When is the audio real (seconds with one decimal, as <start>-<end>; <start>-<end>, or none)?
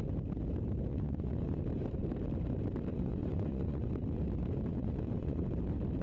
0.0-0.9; 1.6-2.9; 3.9-4.7; 5.4-6.0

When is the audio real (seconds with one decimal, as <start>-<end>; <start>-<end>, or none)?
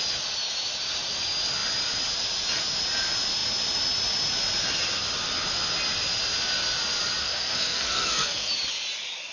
0.0-7.2; 8.5-9.3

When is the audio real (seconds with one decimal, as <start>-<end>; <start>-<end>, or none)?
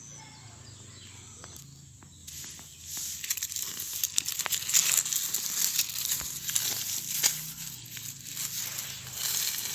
0.0-9.7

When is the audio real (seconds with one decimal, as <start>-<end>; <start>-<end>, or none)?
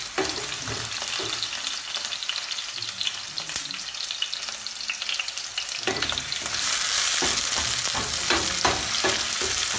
0.0-9.8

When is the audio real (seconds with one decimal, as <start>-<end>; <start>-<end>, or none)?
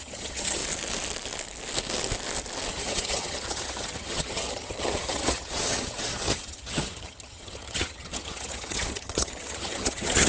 0.6-2.7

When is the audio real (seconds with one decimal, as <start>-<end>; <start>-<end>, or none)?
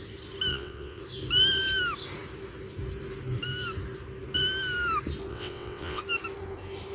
0.0-0.5; 1.0-5.3; 6.0-6.9